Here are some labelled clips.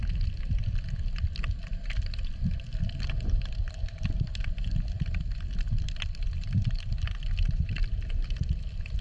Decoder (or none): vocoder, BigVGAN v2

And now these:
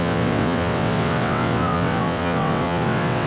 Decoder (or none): vocoder, WaveNeXt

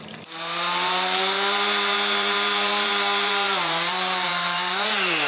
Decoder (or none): vocoder, BigVGAN v2